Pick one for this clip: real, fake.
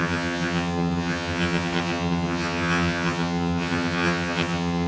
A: fake